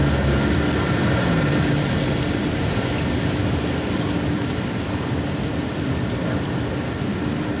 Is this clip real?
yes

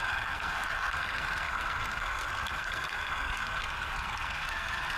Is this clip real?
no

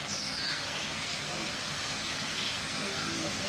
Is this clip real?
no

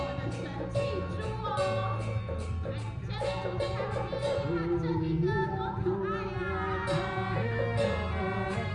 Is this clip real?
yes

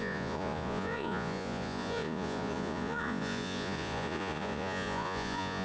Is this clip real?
no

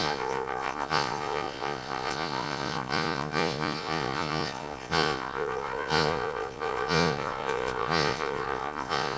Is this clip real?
no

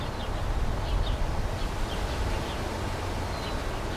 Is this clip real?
yes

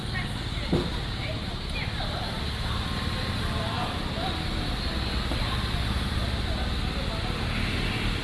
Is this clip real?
yes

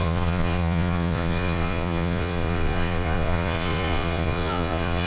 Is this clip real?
no